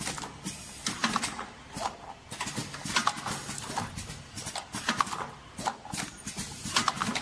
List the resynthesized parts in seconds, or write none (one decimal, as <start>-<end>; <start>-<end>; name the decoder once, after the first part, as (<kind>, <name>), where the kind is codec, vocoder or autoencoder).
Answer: none